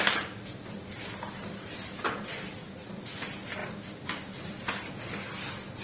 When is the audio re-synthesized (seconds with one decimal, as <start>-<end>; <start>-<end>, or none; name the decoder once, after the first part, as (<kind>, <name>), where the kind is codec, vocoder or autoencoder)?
none